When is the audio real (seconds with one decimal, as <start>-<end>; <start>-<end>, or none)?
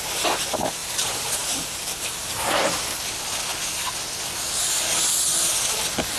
0.0-0.8; 2.4-6.2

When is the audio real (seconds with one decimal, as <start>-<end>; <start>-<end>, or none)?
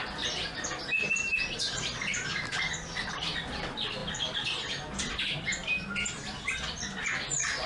0.4-1.5; 4.0-5.0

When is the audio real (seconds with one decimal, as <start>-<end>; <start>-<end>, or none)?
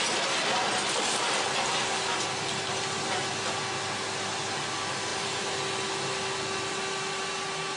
0.0-5.1; 5.6-7.8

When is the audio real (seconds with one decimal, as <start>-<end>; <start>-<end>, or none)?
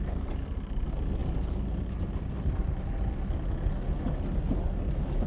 0.0-5.3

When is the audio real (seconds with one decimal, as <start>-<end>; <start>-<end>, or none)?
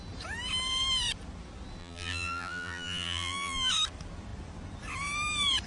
0.0-1.8; 3.7-5.7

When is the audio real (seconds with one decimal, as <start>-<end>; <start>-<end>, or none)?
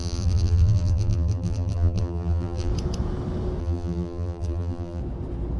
2.7-3.6; 5.0-5.6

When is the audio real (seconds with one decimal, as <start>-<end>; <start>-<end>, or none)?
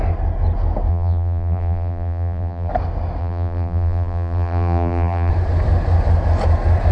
0.0-0.9; 2.7-3.2; 5.3-6.9